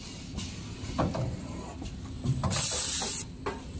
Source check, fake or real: real